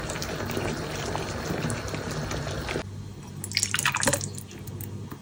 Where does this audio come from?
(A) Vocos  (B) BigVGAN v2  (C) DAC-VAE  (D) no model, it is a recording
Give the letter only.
D